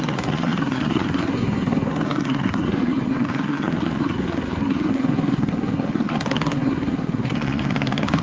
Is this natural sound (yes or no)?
no